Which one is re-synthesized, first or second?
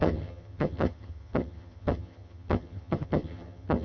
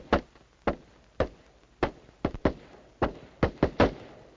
first